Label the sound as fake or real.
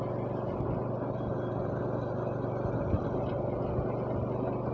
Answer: real